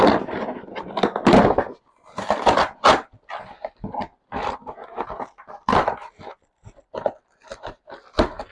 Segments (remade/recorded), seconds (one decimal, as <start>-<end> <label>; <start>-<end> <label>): 0.0-4.1 recorded; 4.1-7.2 remade; 7.2-8.5 recorded